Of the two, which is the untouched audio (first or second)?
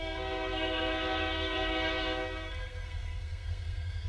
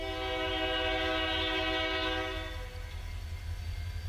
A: second